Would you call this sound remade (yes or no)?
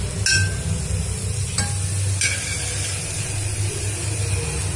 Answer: no